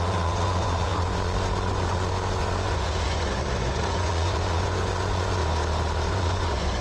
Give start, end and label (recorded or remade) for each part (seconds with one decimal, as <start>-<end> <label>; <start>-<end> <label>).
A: 0.0-5.4 remade; 5.4-6.1 recorded; 6.1-6.8 remade